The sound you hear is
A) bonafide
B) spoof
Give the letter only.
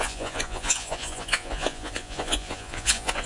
B